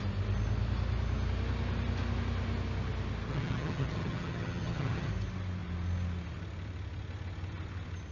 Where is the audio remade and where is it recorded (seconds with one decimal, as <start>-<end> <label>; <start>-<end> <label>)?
0.0-3.3 recorded; 3.3-5.1 remade; 5.1-8.1 recorded